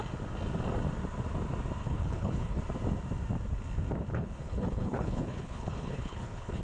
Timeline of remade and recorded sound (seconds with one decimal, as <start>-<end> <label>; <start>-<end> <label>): 0.0-1.8 recorded; 1.8-2.6 remade; 2.6-4.1 recorded; 4.1-6.6 remade